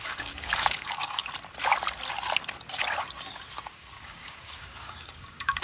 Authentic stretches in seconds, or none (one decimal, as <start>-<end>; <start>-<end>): 1.2-3.7